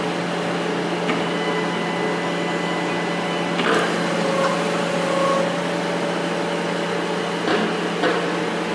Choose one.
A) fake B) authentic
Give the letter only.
B